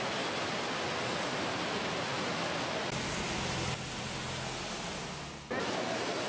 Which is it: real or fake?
real